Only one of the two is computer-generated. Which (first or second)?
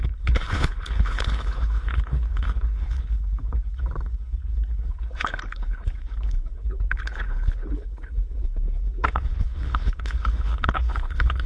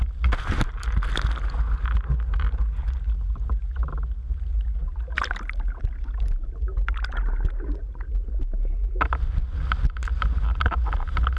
first